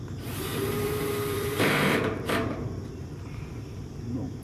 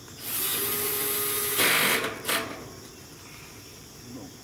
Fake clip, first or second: first